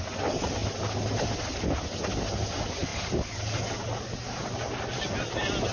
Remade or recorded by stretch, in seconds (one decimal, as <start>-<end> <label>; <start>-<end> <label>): 0.0-5.7 recorded